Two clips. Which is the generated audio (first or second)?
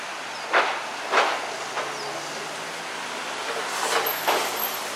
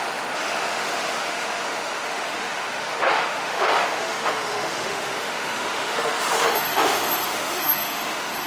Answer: second